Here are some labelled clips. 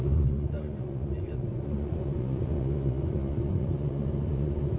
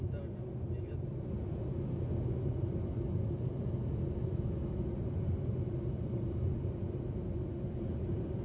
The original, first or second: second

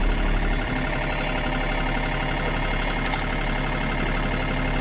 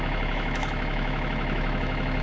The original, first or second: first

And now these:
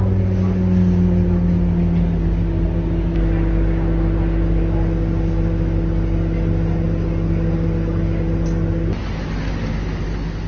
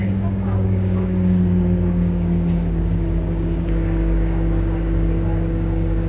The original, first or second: first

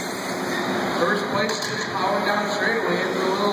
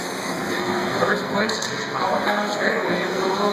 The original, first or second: first